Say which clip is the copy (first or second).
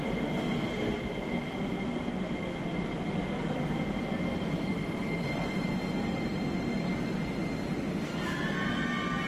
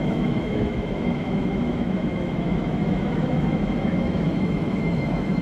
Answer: second